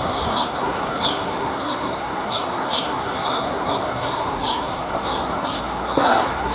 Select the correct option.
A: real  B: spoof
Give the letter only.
B